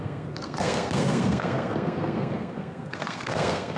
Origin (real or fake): fake